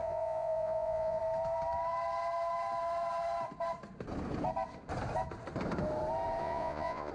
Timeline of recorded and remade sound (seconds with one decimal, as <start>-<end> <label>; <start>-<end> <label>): 0.0-1.2 remade; 1.2-6.4 recorded; 6.4-7.1 remade